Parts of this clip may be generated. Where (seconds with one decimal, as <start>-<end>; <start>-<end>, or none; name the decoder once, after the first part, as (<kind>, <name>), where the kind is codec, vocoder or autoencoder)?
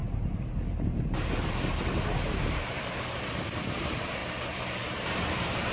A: 0.0-4.2 (vocoder, BigVGAN v2); 4.8-5.7